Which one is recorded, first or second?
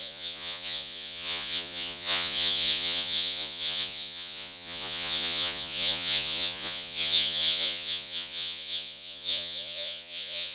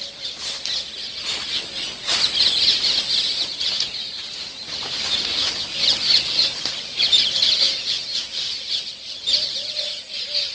second